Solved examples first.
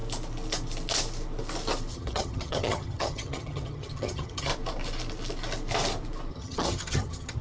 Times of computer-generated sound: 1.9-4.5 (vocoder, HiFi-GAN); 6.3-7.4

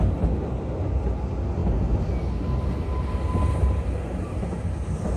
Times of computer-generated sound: none

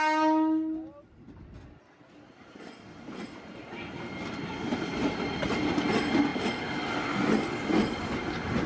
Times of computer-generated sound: 4.9-5.5 (vocoder, BigVGAN v2)

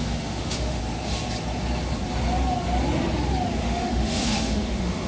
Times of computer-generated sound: 0.0-0.8 (autoencoder, DAC-VAE); 3.6-5.1

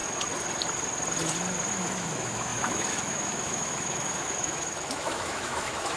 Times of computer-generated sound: 1.7-6.0 (autoencoder, DAC-VAE)

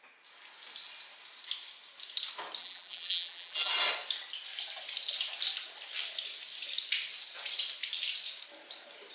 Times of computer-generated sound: 2.6-3.7 (vocoder, BigVGAN v2)